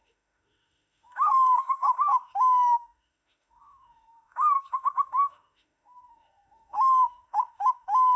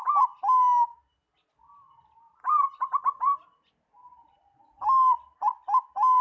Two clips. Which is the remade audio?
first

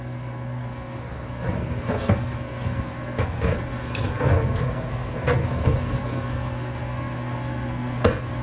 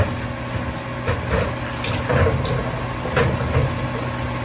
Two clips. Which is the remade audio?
first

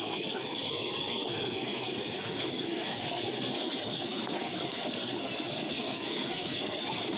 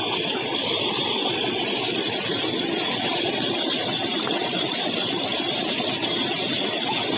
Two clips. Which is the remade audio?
first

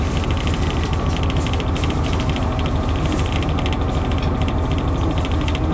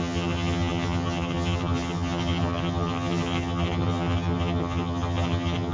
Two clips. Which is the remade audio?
second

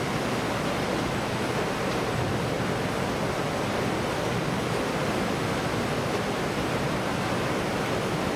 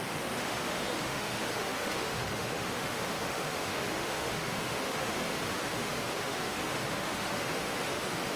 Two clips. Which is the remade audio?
second